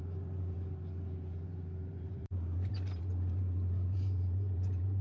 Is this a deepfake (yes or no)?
yes